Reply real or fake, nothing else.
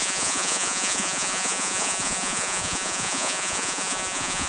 fake